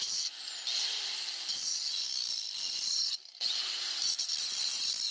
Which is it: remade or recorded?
remade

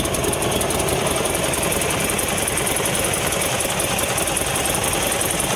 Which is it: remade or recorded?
remade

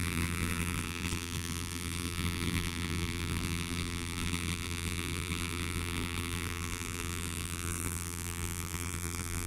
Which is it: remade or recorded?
remade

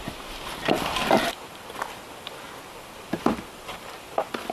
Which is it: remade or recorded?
remade